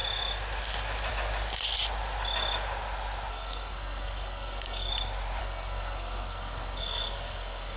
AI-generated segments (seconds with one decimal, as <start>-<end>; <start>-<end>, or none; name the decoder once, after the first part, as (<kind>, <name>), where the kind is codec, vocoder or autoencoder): 3.3-4.9 (codec, SNAC); 5.4-7.8